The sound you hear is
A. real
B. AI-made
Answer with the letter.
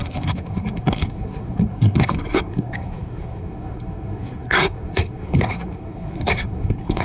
B